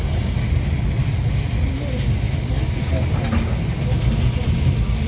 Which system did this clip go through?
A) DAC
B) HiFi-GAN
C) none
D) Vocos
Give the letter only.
C